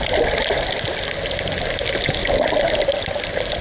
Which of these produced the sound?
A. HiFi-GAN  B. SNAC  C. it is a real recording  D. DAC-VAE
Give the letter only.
C